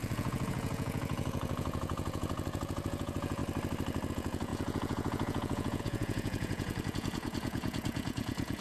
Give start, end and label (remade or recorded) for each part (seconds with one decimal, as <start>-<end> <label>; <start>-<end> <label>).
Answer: 0.0-3.4 remade; 3.4-4.1 recorded; 4.1-8.6 remade